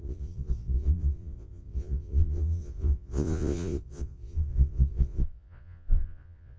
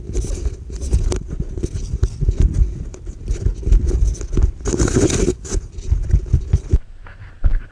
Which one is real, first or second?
second